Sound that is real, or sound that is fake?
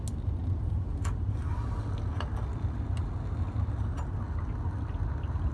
real